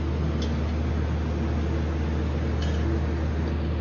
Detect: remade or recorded recorded